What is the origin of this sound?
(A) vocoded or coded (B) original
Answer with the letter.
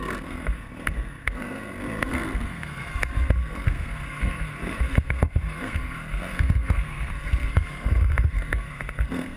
A